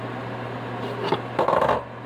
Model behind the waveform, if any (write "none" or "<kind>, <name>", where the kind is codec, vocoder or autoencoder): none